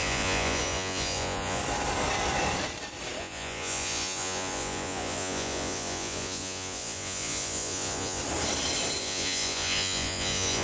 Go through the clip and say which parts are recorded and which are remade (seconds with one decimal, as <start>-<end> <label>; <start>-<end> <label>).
0.0-1.6 remade; 1.6-3.2 recorded; 3.2-8.2 remade; 8.2-9.0 recorded; 9.0-10.6 remade

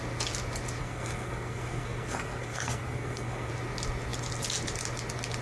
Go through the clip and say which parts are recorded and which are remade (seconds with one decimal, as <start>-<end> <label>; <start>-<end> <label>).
0.0-0.8 recorded; 0.8-3.5 remade; 3.5-5.4 recorded

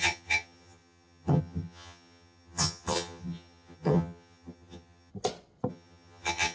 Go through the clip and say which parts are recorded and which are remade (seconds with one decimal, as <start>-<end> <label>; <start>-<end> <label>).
0.0-5.1 remade; 5.1-5.7 recorded; 5.7-6.5 remade

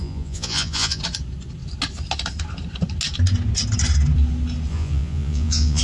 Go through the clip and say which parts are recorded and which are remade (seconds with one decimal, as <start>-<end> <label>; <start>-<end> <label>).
0.0-1.0 remade; 1.0-4.7 recorded; 4.7-5.8 remade

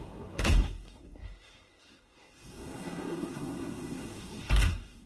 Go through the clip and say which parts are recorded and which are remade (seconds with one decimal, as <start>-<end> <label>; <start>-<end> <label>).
0.0-5.1 remade

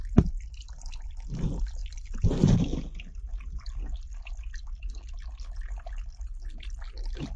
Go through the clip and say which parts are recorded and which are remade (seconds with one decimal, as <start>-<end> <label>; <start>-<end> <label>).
0.0-7.4 recorded